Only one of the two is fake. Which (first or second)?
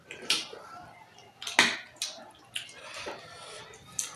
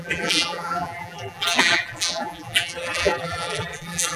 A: second